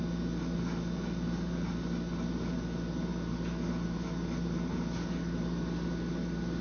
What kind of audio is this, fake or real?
real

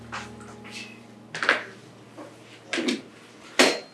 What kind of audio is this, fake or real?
real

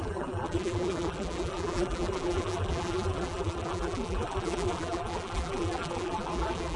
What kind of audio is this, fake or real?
fake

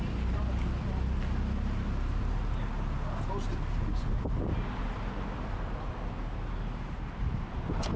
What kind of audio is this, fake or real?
real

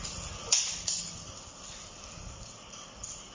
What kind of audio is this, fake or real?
real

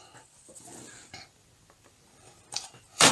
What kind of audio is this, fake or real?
fake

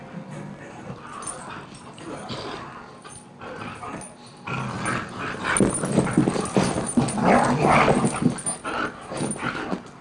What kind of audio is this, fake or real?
real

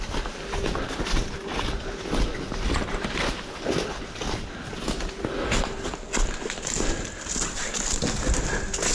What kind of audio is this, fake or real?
real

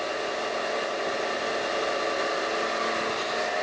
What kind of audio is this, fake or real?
real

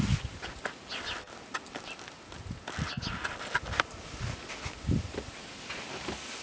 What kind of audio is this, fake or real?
real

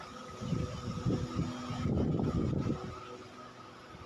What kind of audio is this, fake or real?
real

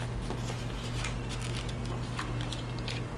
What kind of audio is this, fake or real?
real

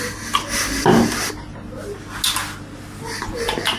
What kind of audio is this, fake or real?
real